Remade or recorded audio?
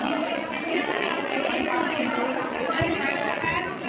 remade